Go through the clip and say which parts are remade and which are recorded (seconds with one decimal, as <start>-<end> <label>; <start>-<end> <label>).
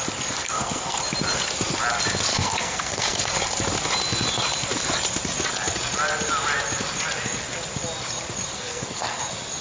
0.0-0.4 recorded; 0.4-1.0 remade; 1.0-2.3 recorded; 2.3-3.2 remade; 3.2-8.5 recorded; 8.5-9.2 remade; 9.2-9.6 recorded